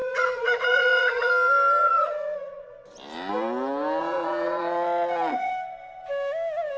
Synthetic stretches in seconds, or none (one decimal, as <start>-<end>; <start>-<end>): 0.0-1.3; 1.8-2.7; 4.0-5.5